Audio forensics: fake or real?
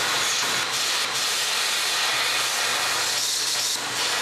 real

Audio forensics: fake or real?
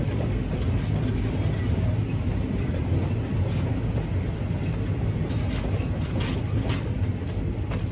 real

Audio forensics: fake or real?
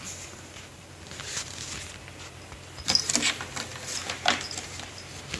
real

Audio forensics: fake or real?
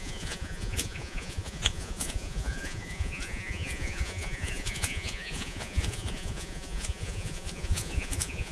fake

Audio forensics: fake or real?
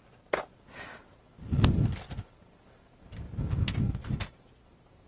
real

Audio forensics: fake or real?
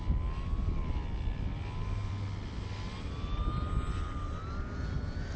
real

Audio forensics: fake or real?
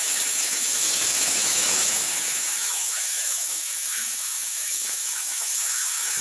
fake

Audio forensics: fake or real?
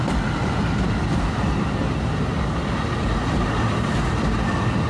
real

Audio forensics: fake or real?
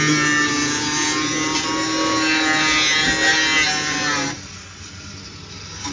real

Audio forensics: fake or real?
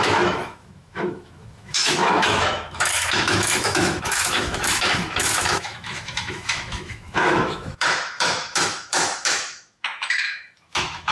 fake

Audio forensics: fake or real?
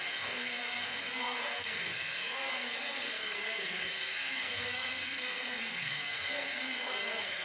fake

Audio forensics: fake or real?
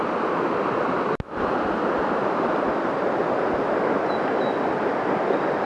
real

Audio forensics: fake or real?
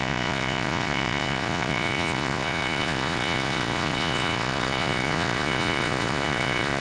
fake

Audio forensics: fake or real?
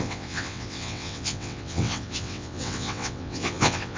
fake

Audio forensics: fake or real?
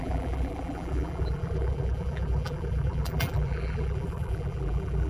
fake